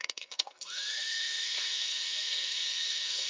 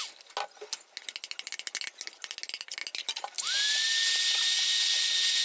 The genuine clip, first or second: second